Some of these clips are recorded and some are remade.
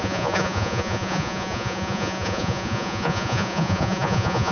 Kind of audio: remade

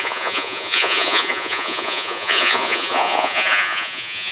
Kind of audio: remade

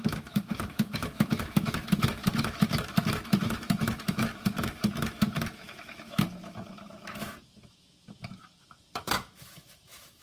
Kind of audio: remade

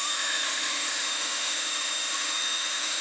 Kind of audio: remade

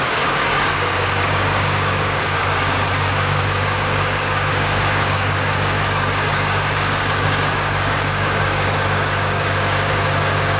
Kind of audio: remade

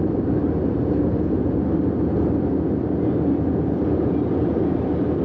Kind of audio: recorded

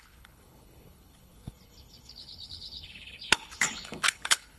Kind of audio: remade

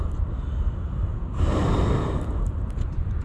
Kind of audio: recorded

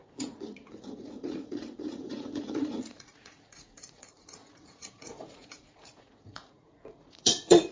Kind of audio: remade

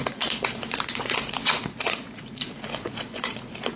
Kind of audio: remade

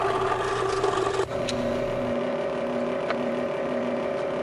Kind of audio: recorded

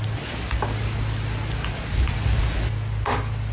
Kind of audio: recorded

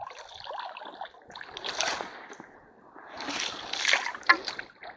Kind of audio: recorded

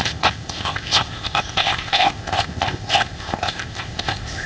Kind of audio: remade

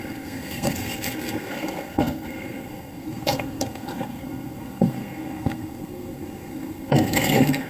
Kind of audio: remade